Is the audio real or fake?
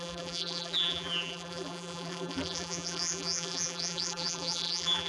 fake